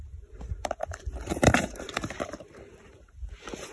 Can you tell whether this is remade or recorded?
remade